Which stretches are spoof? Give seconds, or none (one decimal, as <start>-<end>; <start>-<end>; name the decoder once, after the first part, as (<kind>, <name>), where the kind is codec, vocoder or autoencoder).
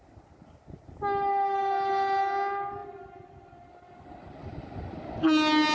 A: none